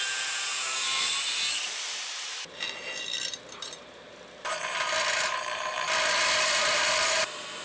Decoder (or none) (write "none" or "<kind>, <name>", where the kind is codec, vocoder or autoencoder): vocoder, BigVGAN v2